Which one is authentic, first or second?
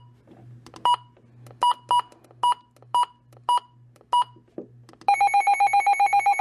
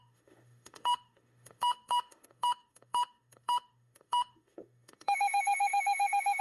first